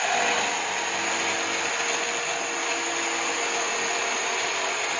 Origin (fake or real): real